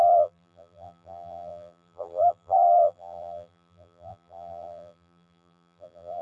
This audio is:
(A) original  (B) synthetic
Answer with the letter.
B